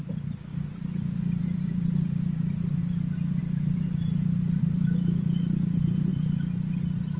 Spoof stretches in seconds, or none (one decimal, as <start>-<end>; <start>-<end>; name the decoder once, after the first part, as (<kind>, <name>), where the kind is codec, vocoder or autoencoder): 0.0-0.5 (vocoder, BigVGAN v2); 1.4-2.8; 3.4-7.2